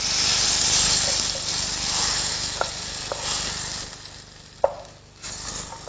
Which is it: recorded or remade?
recorded